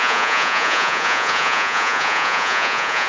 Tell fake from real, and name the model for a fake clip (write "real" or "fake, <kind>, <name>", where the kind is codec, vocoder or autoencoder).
fake, vocoder, Vocos